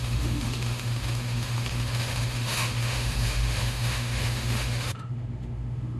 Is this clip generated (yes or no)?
yes